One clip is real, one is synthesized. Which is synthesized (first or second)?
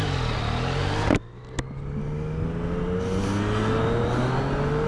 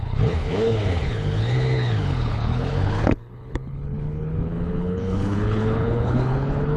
second